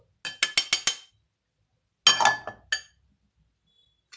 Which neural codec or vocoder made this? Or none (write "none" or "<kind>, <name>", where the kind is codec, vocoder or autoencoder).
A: none